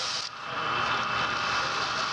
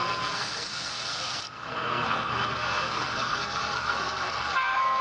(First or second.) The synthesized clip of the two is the second